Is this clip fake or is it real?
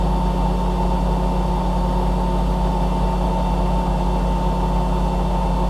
real